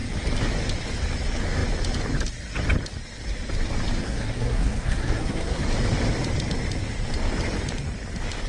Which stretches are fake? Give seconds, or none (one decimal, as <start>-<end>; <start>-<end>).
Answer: 4.0-5.6